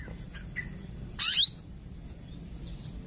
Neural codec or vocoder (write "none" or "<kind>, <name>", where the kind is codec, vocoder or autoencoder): none